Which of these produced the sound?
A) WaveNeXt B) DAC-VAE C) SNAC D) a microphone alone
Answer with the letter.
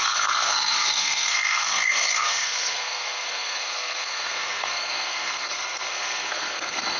C